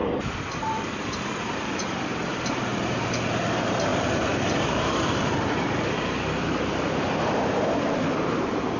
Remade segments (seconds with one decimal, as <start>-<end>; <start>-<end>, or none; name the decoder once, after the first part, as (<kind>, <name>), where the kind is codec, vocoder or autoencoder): 0.0-8.8 (vocoder, BigVGAN v2)